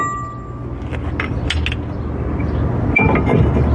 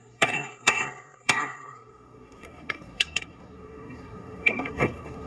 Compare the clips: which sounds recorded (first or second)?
first